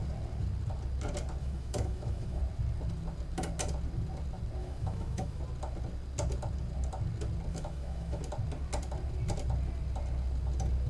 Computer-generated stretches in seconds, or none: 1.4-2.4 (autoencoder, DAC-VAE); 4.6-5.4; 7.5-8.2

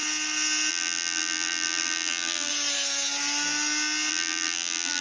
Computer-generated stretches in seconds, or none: 0.7-2.5 (vocoder, BigVGAN v2); 4.1-5.0

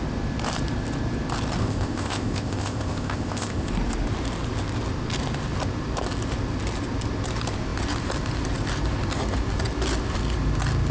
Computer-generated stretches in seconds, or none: 1.6-3.7 (codec, ZipCodec)